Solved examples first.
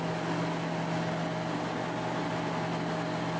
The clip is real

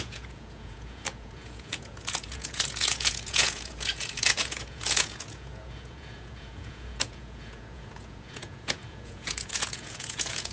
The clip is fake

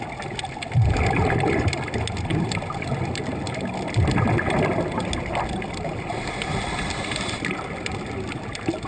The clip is real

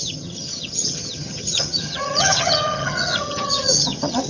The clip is fake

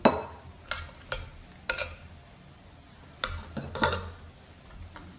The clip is real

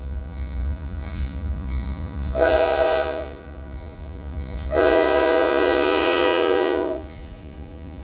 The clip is fake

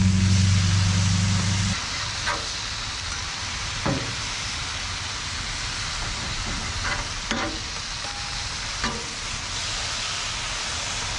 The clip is real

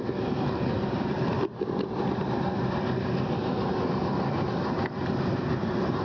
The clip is fake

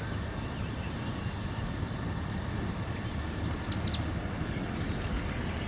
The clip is real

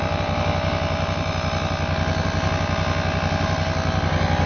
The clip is real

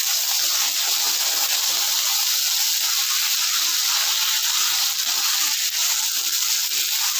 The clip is real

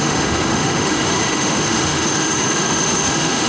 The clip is fake